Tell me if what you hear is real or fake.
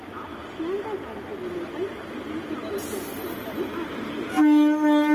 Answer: real